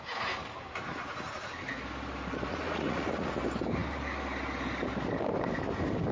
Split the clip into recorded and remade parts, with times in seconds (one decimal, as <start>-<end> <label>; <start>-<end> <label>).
0.0-2.5 recorded; 2.5-3.3 remade; 3.3-6.1 recorded